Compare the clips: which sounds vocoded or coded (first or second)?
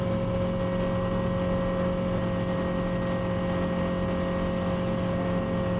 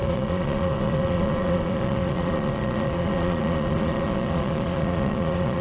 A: second